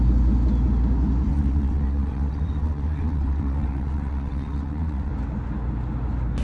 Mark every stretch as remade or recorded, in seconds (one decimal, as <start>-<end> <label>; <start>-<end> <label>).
0.0-1.3 recorded; 1.3-5.1 remade; 5.1-6.4 recorded